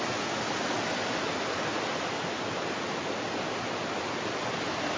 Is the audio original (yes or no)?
yes